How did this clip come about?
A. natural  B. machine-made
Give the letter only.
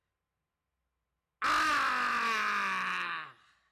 A